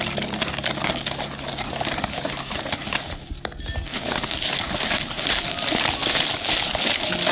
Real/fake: real